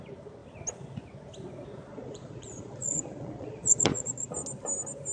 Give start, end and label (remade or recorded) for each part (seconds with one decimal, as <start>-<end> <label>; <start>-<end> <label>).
0.0-1.9 recorded; 1.9-4.3 remade; 4.3-5.1 recorded